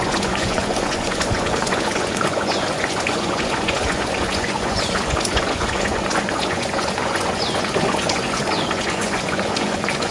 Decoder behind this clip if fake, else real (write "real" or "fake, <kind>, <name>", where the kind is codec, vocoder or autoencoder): fake, vocoder, Vocos